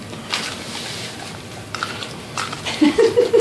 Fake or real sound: fake